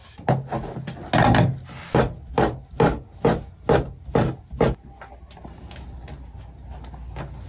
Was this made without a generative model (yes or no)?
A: yes